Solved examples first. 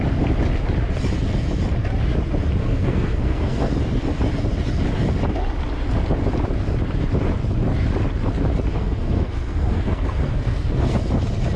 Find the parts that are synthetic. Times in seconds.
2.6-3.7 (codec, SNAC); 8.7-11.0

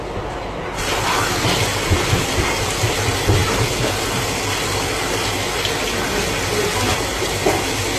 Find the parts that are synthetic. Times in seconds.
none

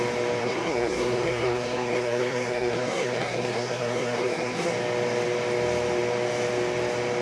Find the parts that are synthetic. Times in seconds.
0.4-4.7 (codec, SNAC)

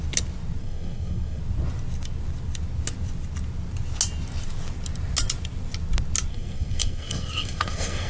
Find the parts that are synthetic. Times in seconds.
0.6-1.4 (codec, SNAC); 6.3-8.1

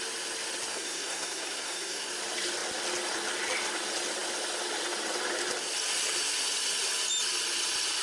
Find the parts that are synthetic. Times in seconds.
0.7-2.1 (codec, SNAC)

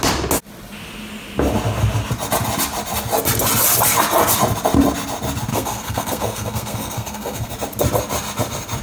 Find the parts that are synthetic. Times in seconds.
5.5-7.5 (codec, SNAC)